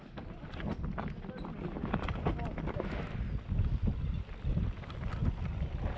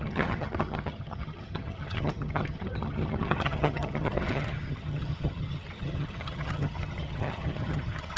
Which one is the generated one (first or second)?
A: second